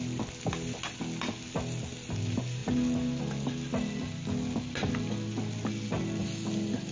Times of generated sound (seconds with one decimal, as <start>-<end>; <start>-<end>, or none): none